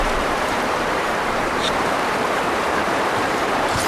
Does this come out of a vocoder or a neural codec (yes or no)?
yes